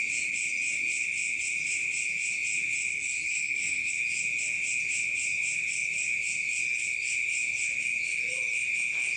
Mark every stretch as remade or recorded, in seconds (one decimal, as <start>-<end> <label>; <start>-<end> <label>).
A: 0.0-2.9 recorded; 2.9-3.9 remade; 3.9-9.2 recorded